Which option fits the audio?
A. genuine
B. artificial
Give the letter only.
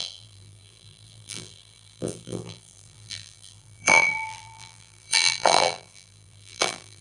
B